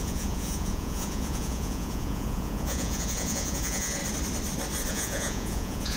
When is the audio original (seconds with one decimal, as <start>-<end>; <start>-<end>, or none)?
4.0-4.9